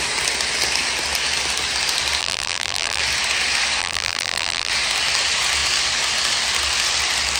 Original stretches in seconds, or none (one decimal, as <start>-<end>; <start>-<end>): 0.0-2.2; 3.0-3.8; 4.7-7.4